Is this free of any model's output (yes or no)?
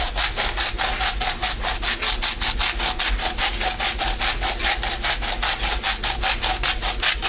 yes